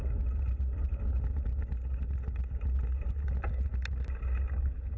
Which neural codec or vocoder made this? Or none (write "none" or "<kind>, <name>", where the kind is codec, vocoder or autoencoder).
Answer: none